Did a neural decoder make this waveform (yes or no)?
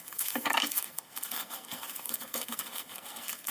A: yes